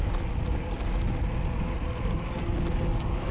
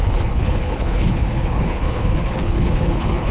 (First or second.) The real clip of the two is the first